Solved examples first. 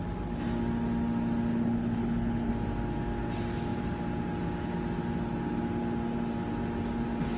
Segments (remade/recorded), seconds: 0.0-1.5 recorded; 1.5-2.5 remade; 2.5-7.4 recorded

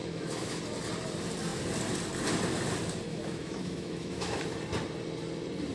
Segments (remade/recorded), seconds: 0.0-0.6 remade; 0.6-3.1 recorded; 3.1-4.4 remade; 4.4-5.7 recorded

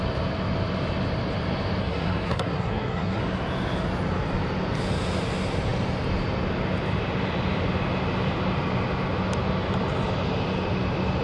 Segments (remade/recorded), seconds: 0.0-1.8 recorded; 1.8-3.2 remade; 3.2-11.2 recorded

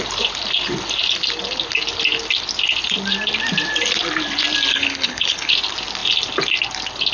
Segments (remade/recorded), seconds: 0.0-4.7 recorded; 4.7-5.5 remade; 5.5-7.1 recorded

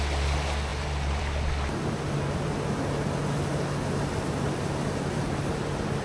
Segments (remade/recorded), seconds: 0.0-6.0 recorded

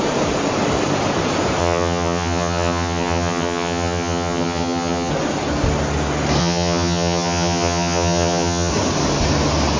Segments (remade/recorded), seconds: 0.0-1.6 recorded; 1.6-5.1 remade; 5.1-6.4 recorded; 6.4-8.7 remade; 8.7-9.8 recorded

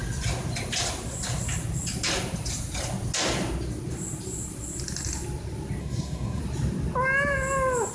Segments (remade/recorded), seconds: 0.0-5.8 recorded; 5.8-6.4 remade; 6.4-7.9 recorded